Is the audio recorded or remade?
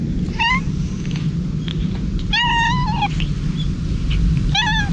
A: recorded